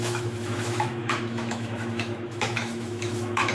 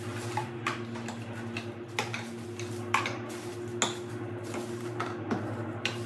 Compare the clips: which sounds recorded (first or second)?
second